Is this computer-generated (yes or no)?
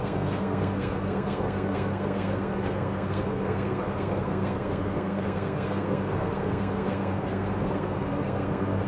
yes